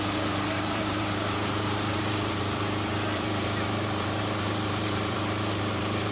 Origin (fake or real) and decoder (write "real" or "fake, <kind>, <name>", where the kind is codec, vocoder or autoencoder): fake, vocoder, BigVGAN v2